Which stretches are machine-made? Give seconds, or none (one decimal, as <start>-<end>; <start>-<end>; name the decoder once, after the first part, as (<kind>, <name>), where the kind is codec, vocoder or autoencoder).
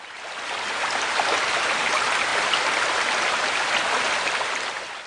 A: none